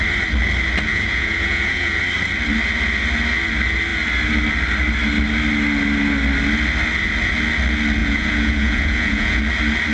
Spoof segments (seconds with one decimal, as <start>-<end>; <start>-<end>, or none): 0.9-2.0; 8.0-9.4